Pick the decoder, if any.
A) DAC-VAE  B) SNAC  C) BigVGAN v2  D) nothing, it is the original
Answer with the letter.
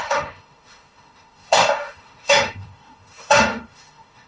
A